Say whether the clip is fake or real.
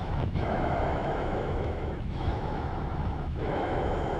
fake